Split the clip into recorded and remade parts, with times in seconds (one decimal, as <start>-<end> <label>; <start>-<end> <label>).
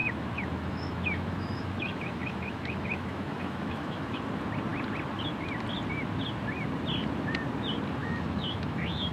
0.0-4.2 remade; 4.2-8.0 recorded; 8.0-9.1 remade